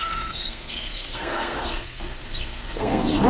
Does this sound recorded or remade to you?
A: remade